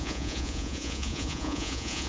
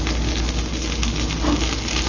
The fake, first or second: first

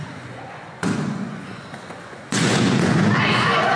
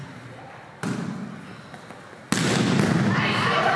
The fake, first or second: first